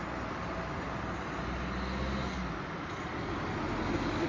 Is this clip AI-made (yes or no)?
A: no